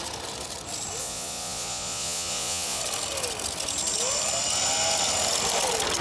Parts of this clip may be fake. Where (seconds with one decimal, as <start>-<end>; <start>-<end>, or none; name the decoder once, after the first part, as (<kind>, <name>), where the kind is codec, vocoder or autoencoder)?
1.0-2.8 (vocoder, Vocos)